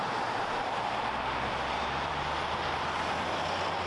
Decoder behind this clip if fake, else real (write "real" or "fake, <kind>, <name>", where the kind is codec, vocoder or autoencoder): fake, vocoder, BigVGAN v2